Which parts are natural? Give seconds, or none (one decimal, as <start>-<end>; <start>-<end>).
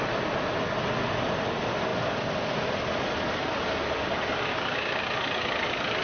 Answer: 0.0-4.5; 5.0-6.0